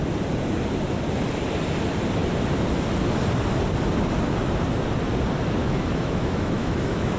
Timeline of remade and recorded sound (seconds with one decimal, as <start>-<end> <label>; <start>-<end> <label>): 0.0-5.6 recorded; 5.6-7.2 remade